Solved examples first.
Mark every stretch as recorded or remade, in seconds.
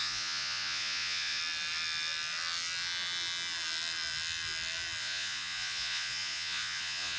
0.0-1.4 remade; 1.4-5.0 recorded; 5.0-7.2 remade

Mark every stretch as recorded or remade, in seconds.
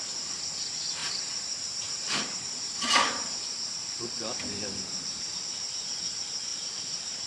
0.0-1.0 recorded; 1.0-5.4 remade; 5.4-6.5 recorded; 6.5-7.3 remade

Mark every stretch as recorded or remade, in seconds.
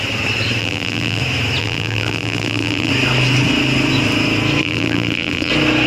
0.0-0.6 recorded; 0.6-1.2 remade; 1.2-1.6 recorded; 1.6-2.9 remade; 2.9-4.6 recorded; 4.6-5.5 remade; 5.5-5.9 recorded